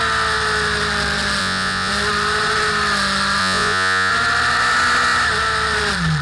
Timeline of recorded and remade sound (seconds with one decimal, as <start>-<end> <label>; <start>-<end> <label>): 0.0-1.4 recorded; 1.4-1.9 remade; 1.9-3.4 recorded; 3.4-4.1 remade; 4.1-6.2 recorded